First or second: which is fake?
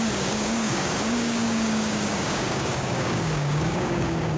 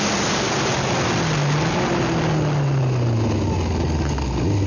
first